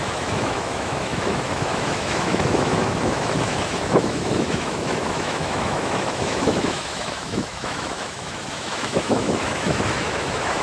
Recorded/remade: remade